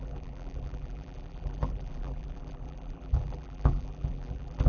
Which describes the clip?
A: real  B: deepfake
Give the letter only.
B